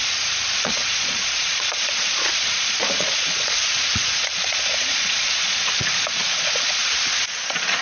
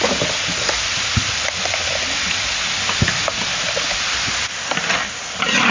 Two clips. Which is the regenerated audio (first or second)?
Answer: first